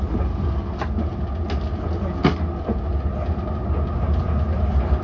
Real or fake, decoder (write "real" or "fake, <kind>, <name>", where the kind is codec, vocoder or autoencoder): real